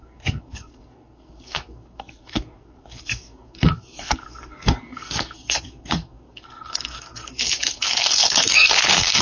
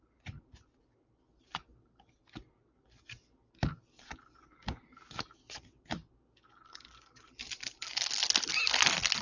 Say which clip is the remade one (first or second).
first